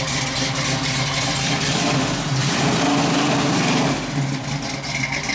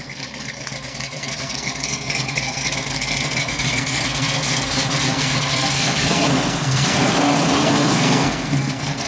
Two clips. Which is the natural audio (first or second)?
first